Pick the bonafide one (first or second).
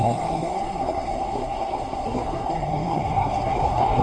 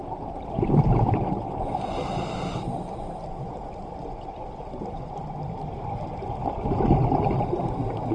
second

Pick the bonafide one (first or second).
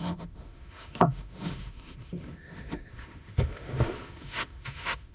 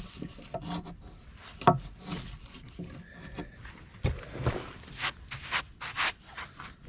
second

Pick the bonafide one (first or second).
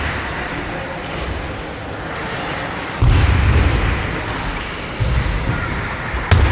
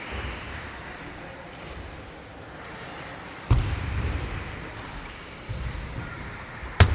first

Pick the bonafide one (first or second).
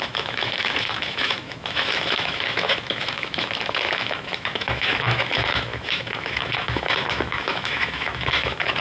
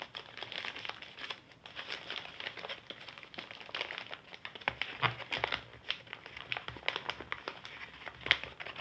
second